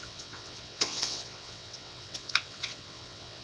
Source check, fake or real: fake